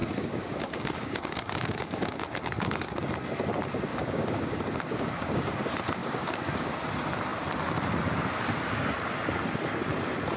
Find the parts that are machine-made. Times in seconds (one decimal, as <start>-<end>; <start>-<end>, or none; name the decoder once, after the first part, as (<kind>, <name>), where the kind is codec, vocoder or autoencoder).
0.0-3.0 (codec, DAC); 3.9-5.5; 6.0-6.7